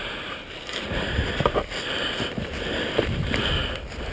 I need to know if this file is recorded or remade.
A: recorded